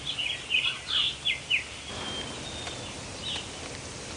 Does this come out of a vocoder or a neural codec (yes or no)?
no